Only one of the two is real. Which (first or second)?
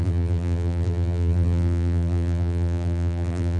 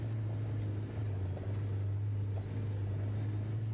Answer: second